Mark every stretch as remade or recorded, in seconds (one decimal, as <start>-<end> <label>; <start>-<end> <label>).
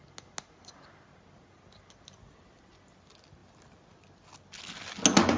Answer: 0.0-5.4 recorded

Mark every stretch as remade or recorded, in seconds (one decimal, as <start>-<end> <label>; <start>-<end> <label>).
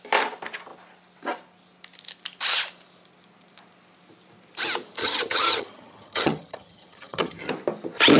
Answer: 0.0-5.0 recorded; 5.0-7.5 remade; 7.5-8.2 recorded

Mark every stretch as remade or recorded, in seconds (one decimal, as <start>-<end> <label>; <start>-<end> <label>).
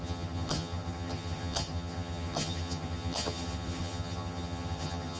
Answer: 0.0-5.2 remade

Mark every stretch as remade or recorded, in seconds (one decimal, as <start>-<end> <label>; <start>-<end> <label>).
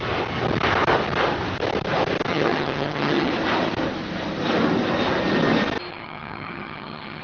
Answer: 0.0-2.3 recorded; 2.3-3.3 remade; 3.3-5.9 recorded; 5.9-7.2 remade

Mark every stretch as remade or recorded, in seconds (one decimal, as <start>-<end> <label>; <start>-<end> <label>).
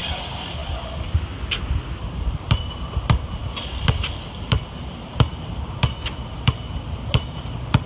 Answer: 0.0-7.9 recorded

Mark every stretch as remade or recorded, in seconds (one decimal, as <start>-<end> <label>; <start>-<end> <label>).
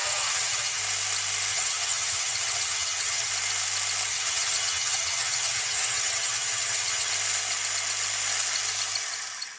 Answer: 0.0-0.8 remade; 0.8-1.5 recorded; 1.5-3.3 remade; 3.3-4.1 recorded; 4.1-7.1 remade; 7.1-9.6 recorded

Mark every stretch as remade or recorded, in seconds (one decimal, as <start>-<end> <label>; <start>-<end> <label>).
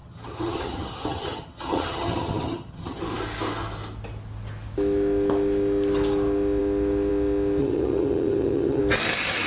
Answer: 0.0-3.0 remade; 3.0-7.6 recorded; 7.6-8.8 remade; 8.8-9.5 recorded